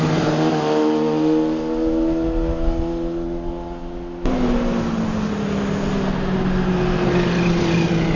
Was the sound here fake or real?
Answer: real